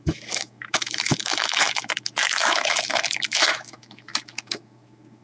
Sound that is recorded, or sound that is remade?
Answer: remade